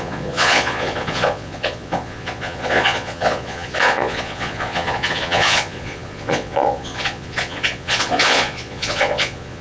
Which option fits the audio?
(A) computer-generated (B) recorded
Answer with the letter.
A